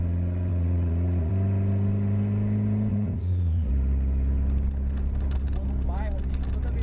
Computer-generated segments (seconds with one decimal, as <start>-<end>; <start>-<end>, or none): 0.5-1.3; 2.9-3.7